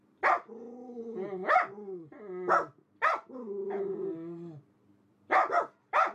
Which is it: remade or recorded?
recorded